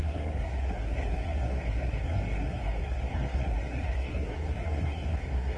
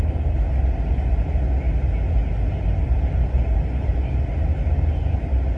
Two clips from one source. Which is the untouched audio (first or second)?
second